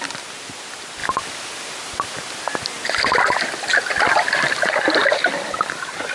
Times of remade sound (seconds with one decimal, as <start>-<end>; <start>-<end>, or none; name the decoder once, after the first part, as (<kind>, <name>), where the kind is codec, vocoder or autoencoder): none